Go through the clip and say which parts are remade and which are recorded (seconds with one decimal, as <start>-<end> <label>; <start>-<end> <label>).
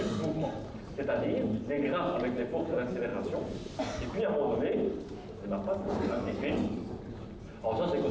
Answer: 0.0-8.1 recorded